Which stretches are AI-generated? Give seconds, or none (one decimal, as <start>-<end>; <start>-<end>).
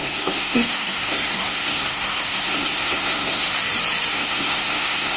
0.0-3.6; 4.1-5.2